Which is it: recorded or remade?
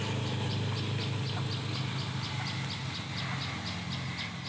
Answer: recorded